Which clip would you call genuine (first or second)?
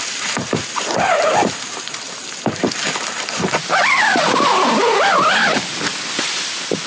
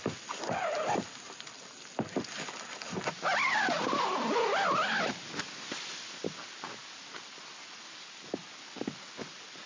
second